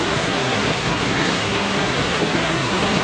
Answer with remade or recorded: remade